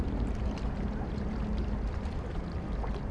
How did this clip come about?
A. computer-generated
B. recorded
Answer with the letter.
A